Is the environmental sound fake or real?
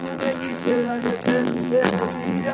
fake